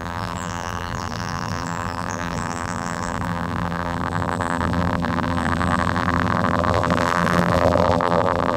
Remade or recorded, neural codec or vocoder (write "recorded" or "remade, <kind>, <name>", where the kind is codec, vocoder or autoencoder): remade, vocoder, BigVGAN v2